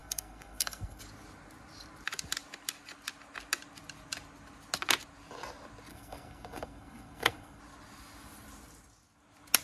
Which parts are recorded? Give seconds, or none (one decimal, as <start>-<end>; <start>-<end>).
1.0-5.9; 7.6-9.6